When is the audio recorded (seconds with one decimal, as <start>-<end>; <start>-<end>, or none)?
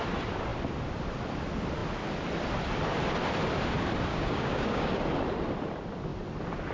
0.0-4.1; 4.9-6.7